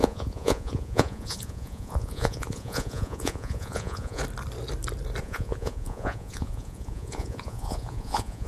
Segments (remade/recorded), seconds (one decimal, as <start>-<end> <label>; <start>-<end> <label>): 0.0-4.2 remade; 4.2-5.2 recorded; 5.2-8.5 remade